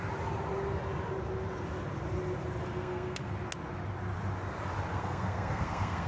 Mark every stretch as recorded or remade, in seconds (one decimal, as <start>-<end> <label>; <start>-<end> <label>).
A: 0.0-2.6 recorded; 2.6-3.3 remade; 3.3-4.9 recorded; 4.9-6.1 remade